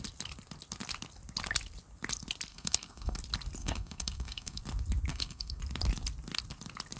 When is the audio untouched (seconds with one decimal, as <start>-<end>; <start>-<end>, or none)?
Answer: 0.0-2.5; 3.2-3.6; 4.6-5.1; 5.6-7.0